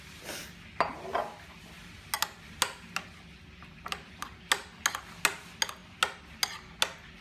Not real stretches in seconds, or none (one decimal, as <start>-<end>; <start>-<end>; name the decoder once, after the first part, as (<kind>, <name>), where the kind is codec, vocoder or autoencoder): none